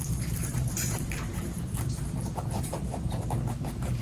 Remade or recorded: remade